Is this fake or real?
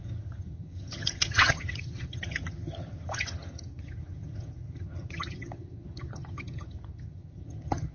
fake